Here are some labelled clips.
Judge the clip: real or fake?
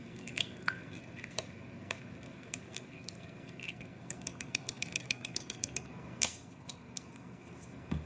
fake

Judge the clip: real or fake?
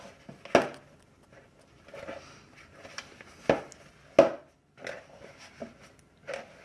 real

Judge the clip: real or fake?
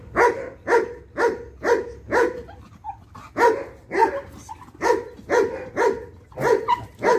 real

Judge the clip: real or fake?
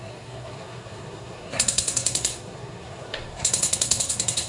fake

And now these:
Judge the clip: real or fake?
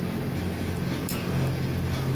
real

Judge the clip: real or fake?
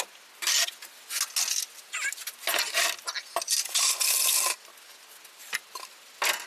real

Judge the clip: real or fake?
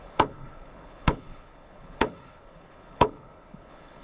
fake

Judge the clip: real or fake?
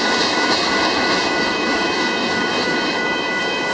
fake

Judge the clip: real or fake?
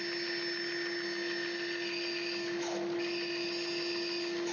real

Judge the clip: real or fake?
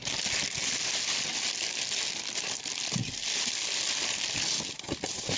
real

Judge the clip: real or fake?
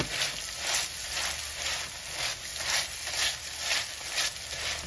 real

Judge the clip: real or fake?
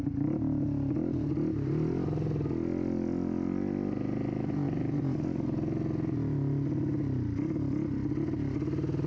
real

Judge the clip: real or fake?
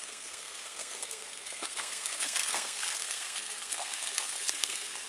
fake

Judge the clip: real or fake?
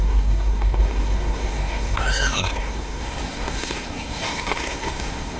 fake